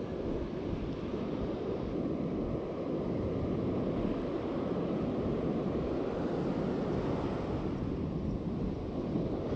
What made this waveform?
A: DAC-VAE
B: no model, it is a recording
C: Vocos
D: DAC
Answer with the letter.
B